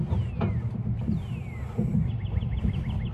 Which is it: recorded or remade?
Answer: recorded